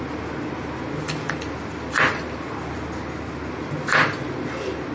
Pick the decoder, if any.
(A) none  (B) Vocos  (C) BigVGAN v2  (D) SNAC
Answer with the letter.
A